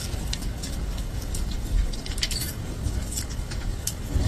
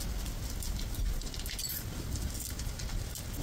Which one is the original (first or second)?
second